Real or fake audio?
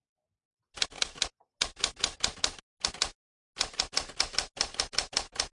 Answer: real